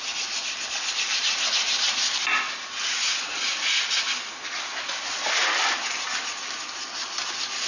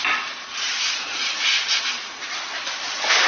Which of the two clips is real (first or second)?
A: first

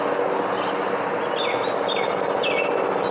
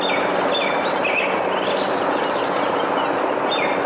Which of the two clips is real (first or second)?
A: first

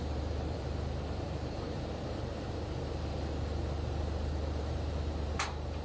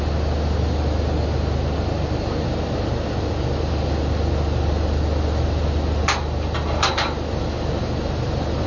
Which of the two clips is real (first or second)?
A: second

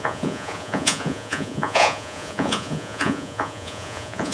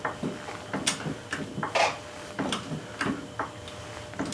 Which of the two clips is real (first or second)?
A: second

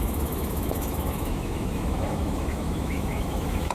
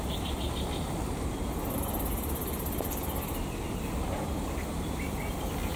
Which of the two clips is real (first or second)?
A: second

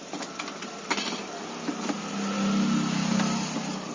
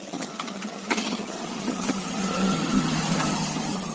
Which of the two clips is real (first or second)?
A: first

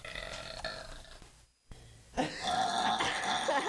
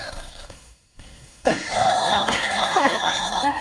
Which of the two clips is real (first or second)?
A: first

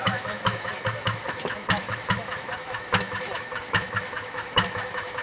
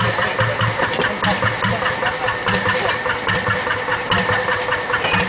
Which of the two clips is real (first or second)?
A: second